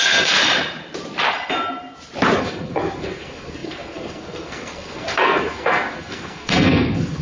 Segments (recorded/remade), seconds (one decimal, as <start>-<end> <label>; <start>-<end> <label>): 0.0-0.4 remade; 0.4-2.4 recorded; 2.4-7.2 remade